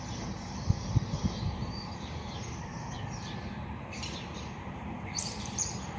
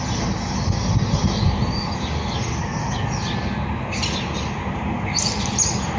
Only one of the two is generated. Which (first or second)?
first